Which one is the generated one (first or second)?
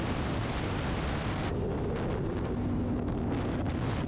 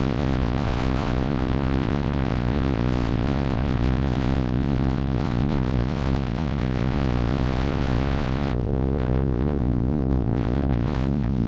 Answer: second